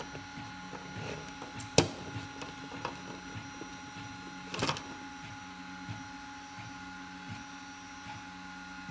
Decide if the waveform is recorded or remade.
recorded